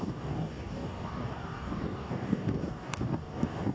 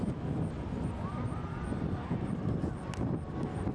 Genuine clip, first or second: second